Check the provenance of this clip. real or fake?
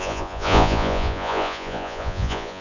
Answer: fake